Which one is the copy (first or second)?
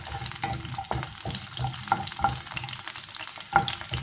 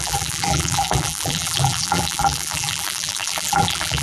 second